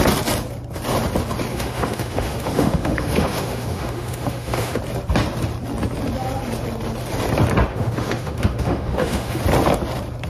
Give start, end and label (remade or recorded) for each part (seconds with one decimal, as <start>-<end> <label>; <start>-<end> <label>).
0.0-1.5 recorded; 1.5-4.8 remade; 4.8-7.7 recorded; 7.7-9.4 remade; 9.4-10.3 recorded